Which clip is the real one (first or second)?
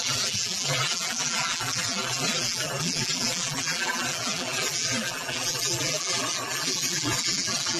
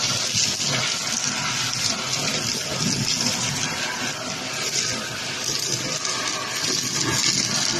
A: second